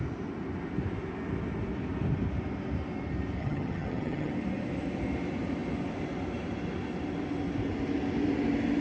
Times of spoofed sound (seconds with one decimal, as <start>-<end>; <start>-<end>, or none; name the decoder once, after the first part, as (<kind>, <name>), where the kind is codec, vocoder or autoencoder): 3.4-4.3 (vocoder, HiFi-GAN)